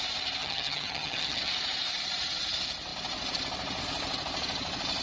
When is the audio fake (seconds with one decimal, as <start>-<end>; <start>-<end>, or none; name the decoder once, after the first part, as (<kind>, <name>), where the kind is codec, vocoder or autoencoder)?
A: 0.4-1.5 (vocoder, HiFi-GAN)